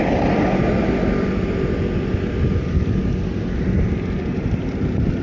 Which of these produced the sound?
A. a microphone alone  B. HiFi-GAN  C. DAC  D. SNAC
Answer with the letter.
A